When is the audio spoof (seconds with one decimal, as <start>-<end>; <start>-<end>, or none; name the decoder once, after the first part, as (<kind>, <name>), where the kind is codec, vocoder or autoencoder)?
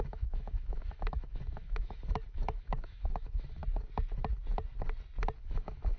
0.0-3.6 (autoencoder, DAC-VAE); 5.4-6.0